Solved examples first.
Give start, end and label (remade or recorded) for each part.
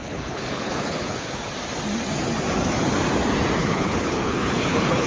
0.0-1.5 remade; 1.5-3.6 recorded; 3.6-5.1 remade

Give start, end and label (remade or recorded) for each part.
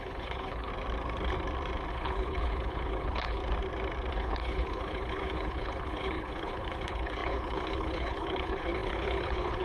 0.0-0.7 remade; 0.7-1.9 recorded; 1.9-3.4 remade; 3.4-4.1 recorded; 4.1-9.6 remade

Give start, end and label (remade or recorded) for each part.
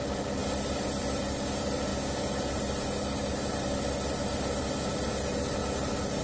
0.0-6.2 recorded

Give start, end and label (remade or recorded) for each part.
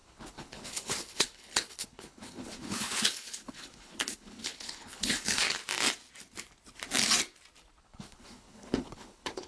0.0-5.6 remade; 5.6-7.8 recorded; 7.8-9.5 remade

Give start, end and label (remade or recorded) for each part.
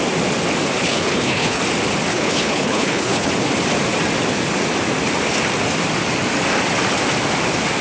0.0-0.8 recorded; 0.8-1.6 remade; 1.6-2.1 recorded; 2.1-3.3 remade; 3.3-7.8 recorded